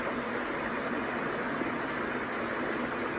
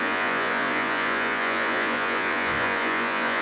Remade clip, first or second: second